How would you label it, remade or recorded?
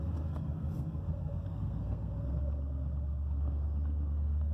remade